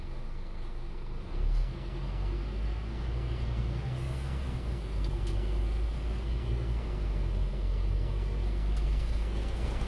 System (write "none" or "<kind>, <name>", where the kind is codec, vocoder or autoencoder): codec, SNAC